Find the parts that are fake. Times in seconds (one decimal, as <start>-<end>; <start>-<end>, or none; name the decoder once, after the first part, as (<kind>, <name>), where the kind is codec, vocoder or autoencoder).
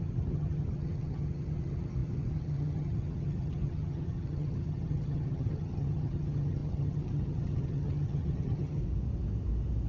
0.0-8.8 (vocoder, HiFi-GAN)